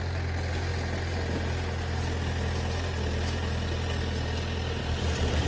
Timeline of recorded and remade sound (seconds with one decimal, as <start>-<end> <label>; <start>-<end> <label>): 0.0-4.8 recorded; 4.8-5.5 remade